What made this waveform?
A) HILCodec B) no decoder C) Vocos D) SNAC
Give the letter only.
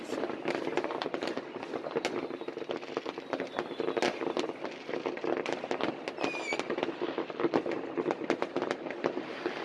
B